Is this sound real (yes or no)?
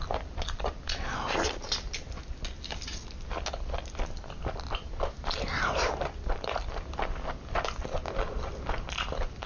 yes